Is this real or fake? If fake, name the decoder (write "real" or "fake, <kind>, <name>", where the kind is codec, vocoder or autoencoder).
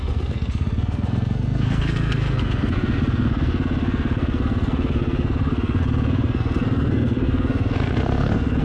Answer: fake, codec, SNAC